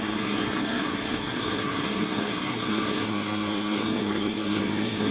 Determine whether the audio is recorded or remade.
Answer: remade